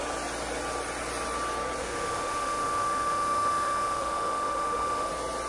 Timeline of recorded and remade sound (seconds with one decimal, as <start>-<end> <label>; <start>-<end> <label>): 0.0-1.8 recorded; 1.8-5.1 remade; 5.1-5.5 recorded